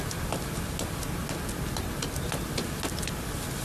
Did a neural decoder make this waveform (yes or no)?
no